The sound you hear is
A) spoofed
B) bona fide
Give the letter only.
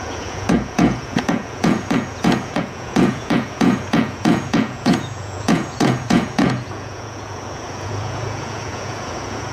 A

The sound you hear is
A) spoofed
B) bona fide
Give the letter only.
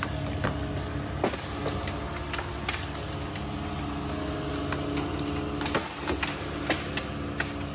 B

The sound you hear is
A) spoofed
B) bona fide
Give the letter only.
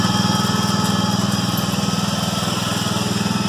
B